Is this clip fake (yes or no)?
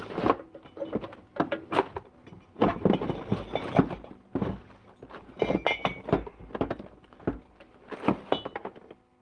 no